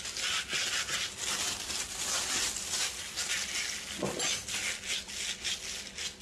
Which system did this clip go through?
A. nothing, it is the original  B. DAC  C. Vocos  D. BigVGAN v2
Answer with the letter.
A